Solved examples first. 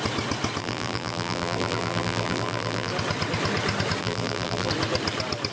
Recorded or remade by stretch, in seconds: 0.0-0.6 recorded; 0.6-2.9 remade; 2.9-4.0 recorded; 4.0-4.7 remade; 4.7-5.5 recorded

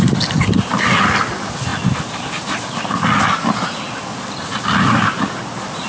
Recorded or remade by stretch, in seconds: 0.0-5.9 recorded

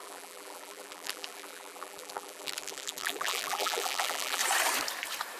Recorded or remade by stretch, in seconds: 0.0-4.4 remade; 4.4-5.4 recorded

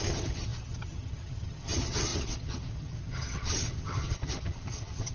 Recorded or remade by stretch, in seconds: 0.0-5.1 remade